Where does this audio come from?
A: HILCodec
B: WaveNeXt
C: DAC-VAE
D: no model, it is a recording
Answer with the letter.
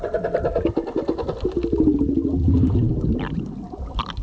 D